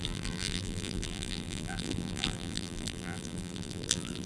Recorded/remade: remade